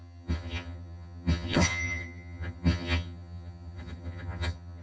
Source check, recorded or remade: remade